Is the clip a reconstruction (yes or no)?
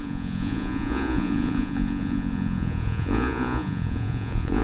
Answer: yes